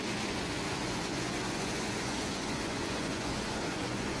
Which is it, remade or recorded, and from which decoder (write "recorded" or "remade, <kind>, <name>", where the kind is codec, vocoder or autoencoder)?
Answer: remade, vocoder, Vocos